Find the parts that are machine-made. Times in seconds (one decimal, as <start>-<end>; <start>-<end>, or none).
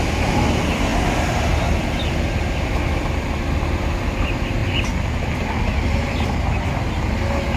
none